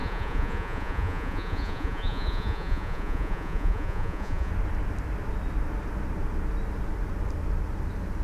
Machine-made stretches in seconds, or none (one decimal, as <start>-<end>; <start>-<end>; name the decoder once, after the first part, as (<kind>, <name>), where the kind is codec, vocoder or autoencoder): 0.0-4.5 (vocoder, Vocos)